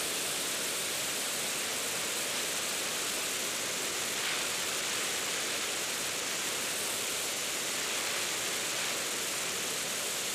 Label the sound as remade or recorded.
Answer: recorded